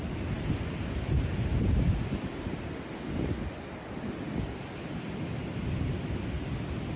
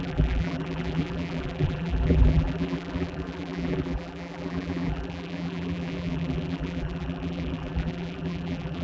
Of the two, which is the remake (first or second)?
second